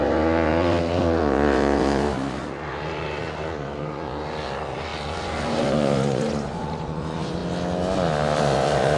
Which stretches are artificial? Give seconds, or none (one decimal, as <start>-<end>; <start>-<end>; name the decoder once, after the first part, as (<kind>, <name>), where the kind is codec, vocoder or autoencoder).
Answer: 0.0-7.4 (vocoder, Vocos); 8.4-9.0